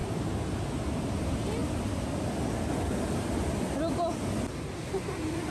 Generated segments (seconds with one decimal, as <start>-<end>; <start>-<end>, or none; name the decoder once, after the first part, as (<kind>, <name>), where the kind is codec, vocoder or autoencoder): none